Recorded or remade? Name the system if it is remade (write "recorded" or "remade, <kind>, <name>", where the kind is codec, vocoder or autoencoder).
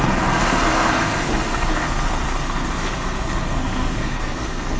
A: remade, codec, SNAC